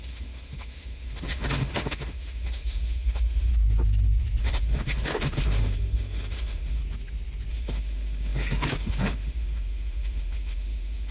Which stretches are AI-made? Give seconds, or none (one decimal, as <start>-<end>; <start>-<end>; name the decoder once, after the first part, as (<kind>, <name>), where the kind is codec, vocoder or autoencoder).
0.0-3.5 (autoencoder, DAC-VAE); 4.4-6.8; 7.5-11.1

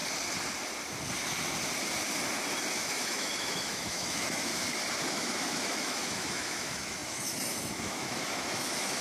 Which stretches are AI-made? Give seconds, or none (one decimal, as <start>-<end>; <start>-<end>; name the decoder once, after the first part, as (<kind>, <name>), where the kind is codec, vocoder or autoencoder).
2.7-4.5 (autoencoder, DAC-VAE); 5.0-9.0

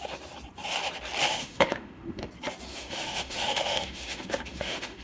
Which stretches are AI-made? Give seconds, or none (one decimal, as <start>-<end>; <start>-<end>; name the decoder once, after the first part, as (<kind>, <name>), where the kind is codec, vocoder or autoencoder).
1.3-2.3 (autoencoder, DAC-VAE); 2.7-5.0

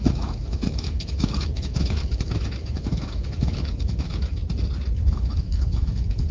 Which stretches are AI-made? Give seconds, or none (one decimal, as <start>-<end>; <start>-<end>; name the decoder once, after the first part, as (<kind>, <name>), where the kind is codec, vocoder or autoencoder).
0.0-4.4 (autoencoder, DAC-VAE); 5.1-6.3